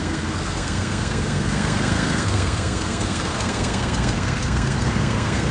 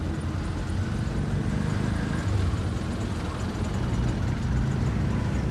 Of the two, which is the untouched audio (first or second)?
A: second